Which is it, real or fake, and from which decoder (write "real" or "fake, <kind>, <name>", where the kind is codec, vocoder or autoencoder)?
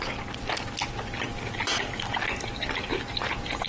real